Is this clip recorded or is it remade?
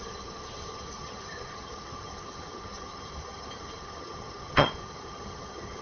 remade